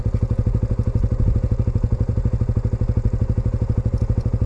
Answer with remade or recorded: recorded